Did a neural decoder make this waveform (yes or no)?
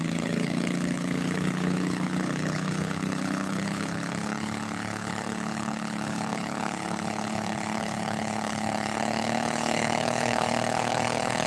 yes